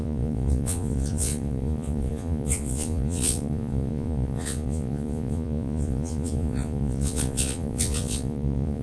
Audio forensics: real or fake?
fake